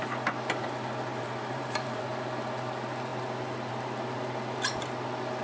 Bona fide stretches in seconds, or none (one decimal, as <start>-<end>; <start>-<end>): 0.0-1.1; 2.0-5.4